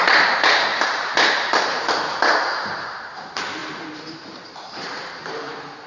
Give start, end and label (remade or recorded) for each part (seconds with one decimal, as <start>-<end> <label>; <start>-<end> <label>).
0.0-0.7 recorded; 0.7-3.2 remade; 3.2-3.6 recorded; 3.6-5.9 remade